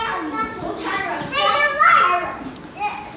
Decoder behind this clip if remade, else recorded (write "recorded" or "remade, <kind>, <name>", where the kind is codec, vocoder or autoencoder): recorded